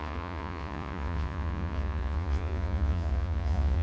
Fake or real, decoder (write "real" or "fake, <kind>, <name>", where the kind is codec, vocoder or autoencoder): fake, vocoder, Vocos